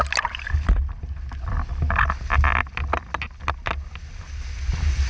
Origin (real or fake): real